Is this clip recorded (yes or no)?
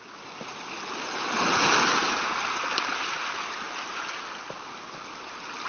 yes